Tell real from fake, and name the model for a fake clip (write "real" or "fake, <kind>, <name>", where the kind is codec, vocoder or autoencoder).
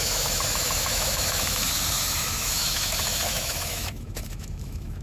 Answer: fake, autoencoder, DAC-VAE